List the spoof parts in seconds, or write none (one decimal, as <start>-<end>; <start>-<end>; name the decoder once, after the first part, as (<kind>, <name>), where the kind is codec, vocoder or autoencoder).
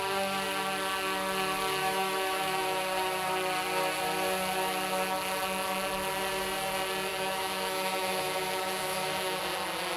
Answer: 1.8-3.3 (autoencoder, DAC-VAE); 7.1-9.4